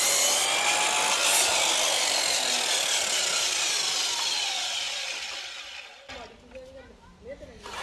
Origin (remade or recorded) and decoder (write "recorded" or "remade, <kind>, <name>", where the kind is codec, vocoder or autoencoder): recorded